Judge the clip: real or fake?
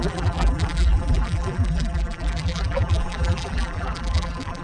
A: fake